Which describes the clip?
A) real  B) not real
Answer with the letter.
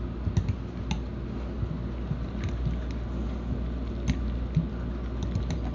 A